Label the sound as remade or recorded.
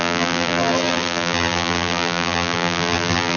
remade